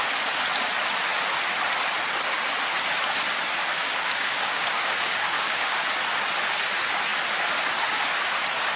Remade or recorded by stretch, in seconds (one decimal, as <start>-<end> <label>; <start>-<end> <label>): 0.0-3.8 recorded; 3.8-5.8 remade; 5.8-8.8 recorded

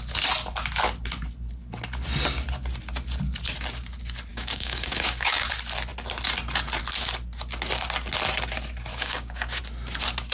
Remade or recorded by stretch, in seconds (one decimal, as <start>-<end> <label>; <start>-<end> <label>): 0.0-4.3 recorded; 4.3-5.5 remade; 5.5-8.9 recorded; 8.9-9.6 remade; 9.6-10.3 recorded